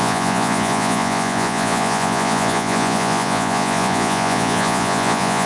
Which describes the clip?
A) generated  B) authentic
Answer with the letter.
A